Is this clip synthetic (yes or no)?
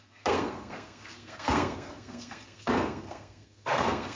yes